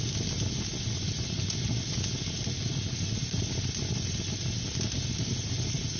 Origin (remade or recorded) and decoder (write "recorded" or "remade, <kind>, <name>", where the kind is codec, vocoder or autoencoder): recorded